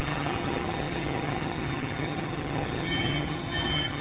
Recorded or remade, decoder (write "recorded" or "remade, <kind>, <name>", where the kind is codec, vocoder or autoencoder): remade, vocoder, HiFi-GAN